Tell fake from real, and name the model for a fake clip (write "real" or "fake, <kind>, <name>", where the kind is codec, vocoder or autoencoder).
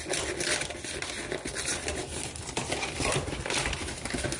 real